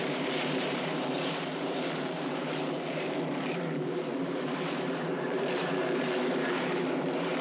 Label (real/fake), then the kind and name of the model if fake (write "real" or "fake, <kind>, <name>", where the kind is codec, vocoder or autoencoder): fake, vocoder, BigVGAN v2